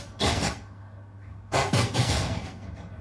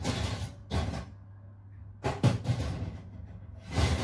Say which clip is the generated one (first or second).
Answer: first